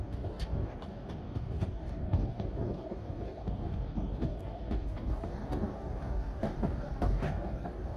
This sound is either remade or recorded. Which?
remade